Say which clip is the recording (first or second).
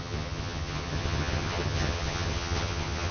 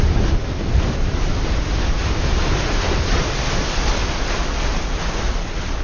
second